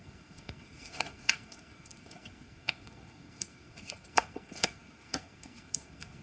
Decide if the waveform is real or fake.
fake